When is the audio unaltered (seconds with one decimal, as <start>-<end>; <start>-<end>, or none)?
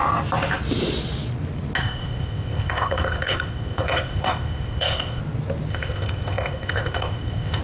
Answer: 0.0-1.8; 5.2-5.7